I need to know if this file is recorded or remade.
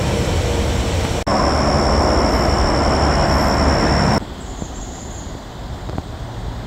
recorded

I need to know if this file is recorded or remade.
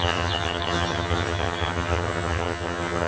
remade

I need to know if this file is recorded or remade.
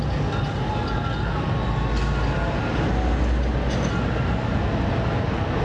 recorded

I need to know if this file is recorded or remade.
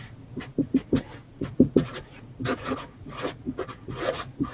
remade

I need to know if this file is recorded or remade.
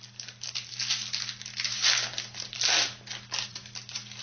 recorded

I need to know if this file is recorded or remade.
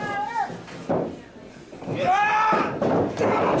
recorded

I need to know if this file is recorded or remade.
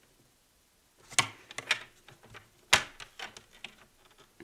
recorded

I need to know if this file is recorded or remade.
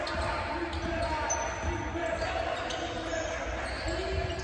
recorded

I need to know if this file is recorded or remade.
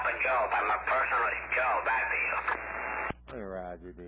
recorded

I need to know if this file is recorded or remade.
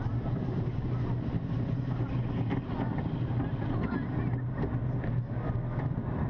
recorded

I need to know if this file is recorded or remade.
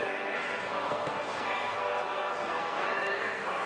remade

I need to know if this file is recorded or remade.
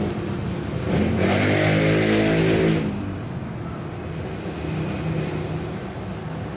recorded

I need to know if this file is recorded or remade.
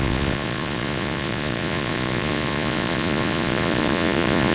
remade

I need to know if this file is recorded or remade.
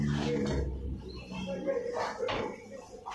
recorded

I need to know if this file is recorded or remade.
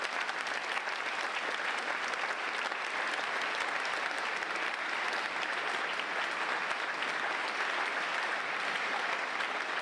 recorded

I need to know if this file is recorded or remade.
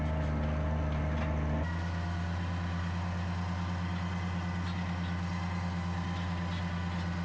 recorded